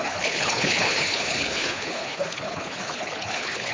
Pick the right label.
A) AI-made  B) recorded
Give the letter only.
A